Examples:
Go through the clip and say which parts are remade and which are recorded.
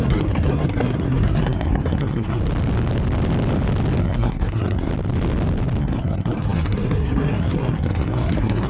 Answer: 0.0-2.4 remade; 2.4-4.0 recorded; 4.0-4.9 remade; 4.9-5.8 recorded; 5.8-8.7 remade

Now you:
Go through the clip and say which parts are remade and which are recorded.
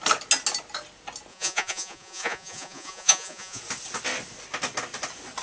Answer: 0.0-1.3 recorded; 1.3-3.6 remade; 3.6-5.4 recorded